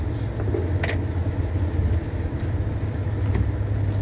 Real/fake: real